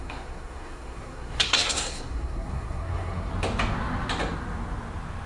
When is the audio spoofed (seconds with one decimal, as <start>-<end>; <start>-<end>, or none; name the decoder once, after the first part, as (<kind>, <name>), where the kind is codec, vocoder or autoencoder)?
0.0-3.3 (codec, SNAC)